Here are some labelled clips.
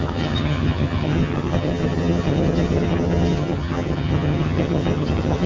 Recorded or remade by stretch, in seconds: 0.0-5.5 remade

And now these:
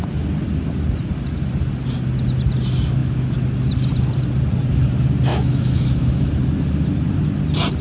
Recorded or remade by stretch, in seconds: 0.0-5.3 recorded; 5.3-6.3 remade; 6.3-7.8 recorded

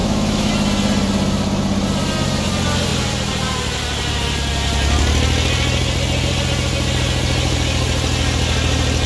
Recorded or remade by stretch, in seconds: 0.0-0.5 remade; 0.5-9.1 recorded

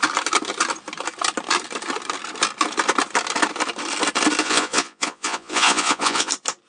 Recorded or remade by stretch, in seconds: 0.0-4.4 recorded; 4.4-6.3 remade; 6.3-6.7 recorded

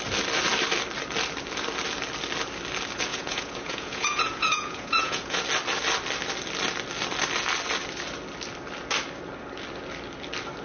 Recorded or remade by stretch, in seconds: 0.0-3.1 recorded; 3.1-5.4 remade; 5.4-10.6 recorded

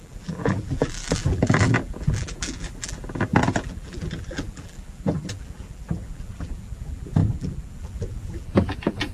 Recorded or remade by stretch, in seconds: 0.0-9.1 remade

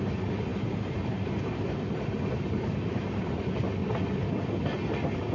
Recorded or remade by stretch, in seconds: 0.0-0.5 recorded; 0.5-3.3 remade; 3.3-5.3 recorded